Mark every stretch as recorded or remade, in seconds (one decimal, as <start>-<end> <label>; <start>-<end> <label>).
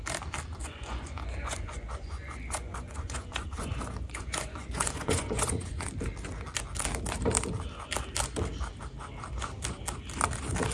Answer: 0.0-0.6 recorded; 0.6-5.9 remade; 5.9-10.7 recorded